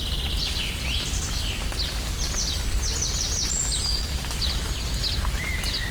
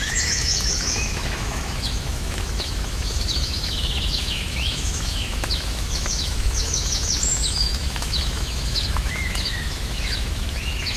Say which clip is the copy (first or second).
second